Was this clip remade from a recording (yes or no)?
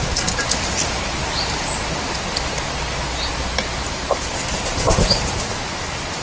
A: no